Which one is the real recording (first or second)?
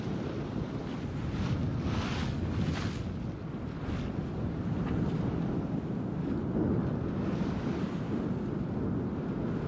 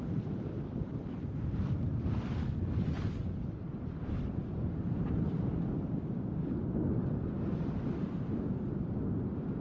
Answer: first